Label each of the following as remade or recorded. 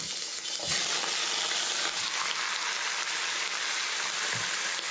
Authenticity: recorded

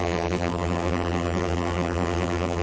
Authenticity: remade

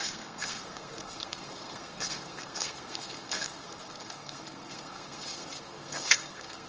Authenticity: remade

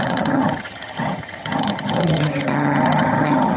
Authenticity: remade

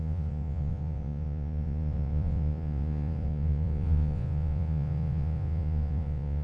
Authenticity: remade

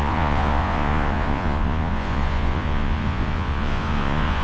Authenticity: remade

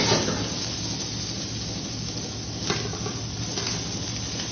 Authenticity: recorded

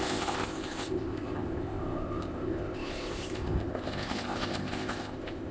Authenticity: remade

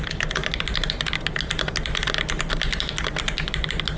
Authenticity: recorded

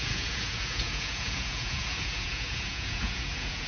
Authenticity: remade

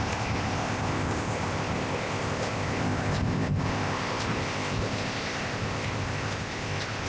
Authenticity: remade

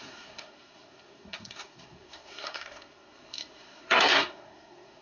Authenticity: remade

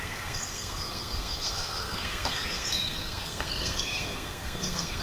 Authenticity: remade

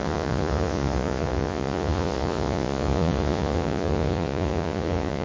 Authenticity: remade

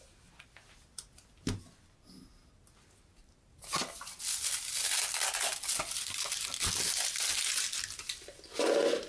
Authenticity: recorded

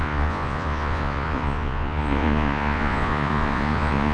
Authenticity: remade